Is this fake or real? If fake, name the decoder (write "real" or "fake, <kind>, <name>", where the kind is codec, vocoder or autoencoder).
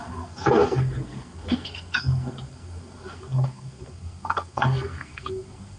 fake, codec, SNAC